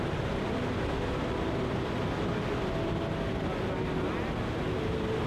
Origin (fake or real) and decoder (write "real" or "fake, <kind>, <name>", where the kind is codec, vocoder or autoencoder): real